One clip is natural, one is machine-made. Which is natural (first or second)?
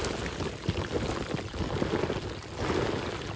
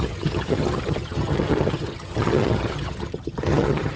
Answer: first